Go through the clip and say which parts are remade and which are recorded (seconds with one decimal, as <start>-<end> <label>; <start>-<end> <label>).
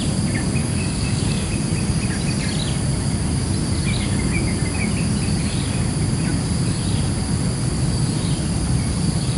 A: 0.0-0.6 recorded; 0.6-1.5 remade; 1.5-9.4 recorded